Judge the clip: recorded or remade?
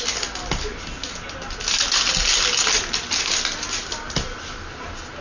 recorded